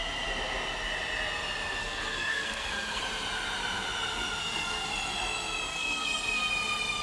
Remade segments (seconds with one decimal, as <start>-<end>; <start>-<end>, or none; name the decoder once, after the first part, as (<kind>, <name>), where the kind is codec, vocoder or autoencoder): 1.8-3.0 (codec, SNAC); 4.4-4.9; 5.7-6.5